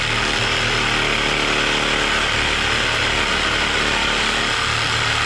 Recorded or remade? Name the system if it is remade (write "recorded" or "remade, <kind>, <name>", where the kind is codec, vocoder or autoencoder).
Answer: recorded